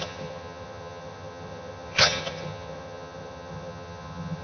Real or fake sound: fake